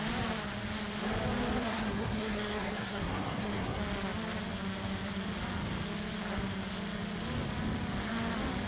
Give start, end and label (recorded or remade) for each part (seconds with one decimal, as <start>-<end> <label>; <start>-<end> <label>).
0.0-1.6 recorded; 1.6-3.8 remade; 3.8-8.7 recorded